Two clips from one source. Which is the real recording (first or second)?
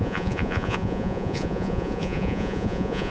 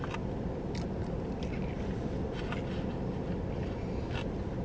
second